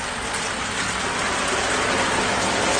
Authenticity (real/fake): real